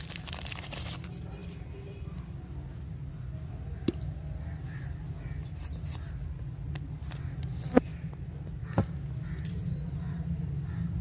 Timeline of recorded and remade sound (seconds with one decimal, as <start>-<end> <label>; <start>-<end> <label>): 0.0-11.0 recorded